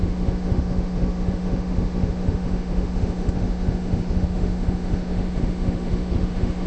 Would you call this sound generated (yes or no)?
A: yes